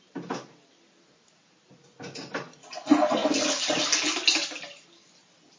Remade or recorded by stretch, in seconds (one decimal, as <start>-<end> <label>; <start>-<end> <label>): 0.0-5.6 recorded